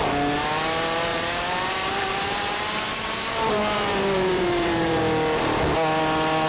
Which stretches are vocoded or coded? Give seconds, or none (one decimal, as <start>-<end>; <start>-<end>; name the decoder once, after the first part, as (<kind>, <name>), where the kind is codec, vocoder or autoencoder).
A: 1.1-5.0 (vocoder, BigVGAN v2)